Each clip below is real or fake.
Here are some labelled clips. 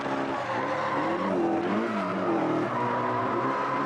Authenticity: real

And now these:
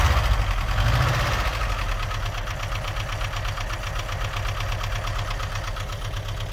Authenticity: real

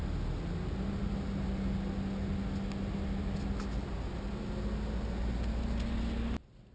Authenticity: real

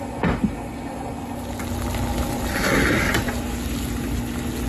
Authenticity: real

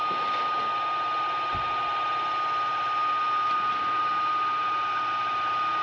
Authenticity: real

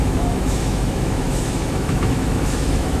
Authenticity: fake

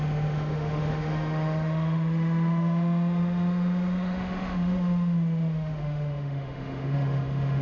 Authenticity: fake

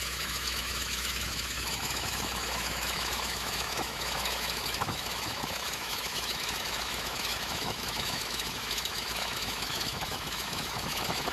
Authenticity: fake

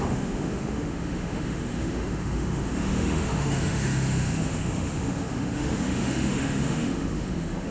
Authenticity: fake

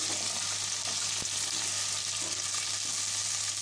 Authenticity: real